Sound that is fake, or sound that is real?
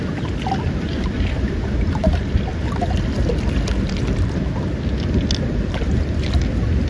real